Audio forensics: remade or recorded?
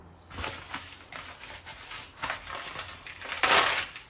recorded